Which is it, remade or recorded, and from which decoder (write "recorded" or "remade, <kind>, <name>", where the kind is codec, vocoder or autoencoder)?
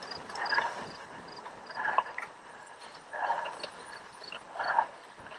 recorded